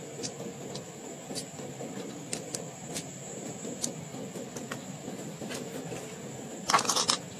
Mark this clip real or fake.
real